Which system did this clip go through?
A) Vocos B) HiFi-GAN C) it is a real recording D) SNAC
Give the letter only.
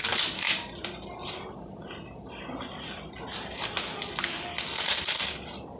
C